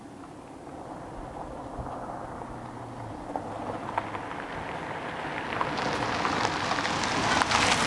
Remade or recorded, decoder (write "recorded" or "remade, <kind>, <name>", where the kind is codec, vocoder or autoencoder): recorded